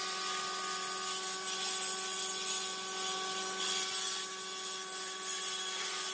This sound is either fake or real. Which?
real